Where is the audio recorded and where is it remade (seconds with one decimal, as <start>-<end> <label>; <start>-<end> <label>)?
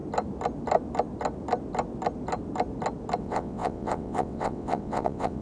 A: 0.0-3.2 recorded; 3.2-5.4 remade